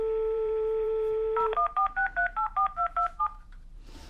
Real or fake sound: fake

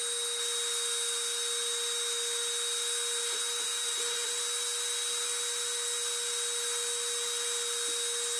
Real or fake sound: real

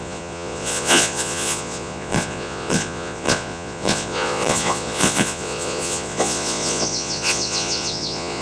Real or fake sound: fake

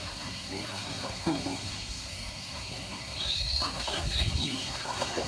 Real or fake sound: fake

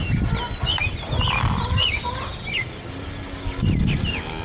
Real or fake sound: real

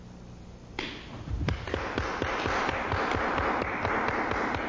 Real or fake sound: real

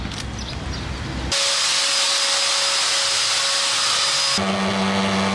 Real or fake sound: real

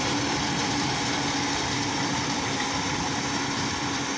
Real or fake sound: fake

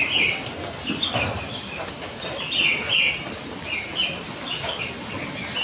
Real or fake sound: real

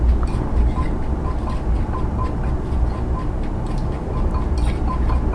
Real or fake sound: real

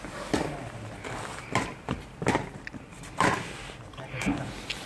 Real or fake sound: real